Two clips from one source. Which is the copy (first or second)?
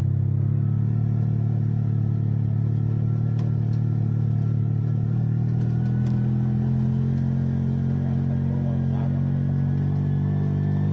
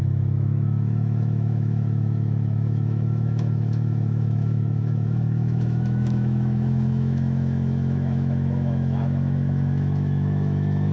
second